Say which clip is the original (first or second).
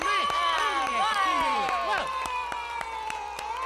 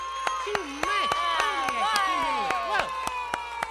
second